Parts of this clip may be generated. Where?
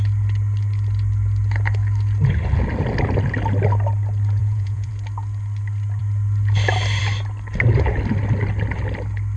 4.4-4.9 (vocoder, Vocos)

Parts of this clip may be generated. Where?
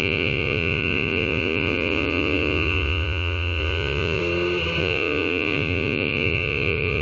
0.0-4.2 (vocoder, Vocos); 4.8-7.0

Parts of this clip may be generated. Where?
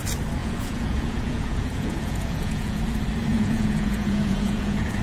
0.4-2.8 (vocoder, Vocos); 3.3-5.0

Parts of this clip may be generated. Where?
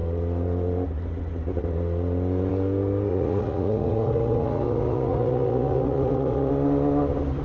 3.1-6.5 (vocoder, Vocos)